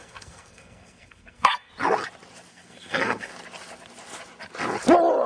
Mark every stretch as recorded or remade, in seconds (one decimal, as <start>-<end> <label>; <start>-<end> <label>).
0.0-1.7 remade; 1.7-2.5 recorded; 2.5-3.3 remade; 3.3-5.3 recorded